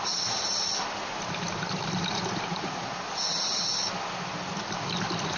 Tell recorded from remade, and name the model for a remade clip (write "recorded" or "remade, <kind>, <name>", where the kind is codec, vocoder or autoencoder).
recorded